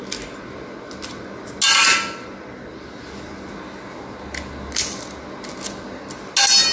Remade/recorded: recorded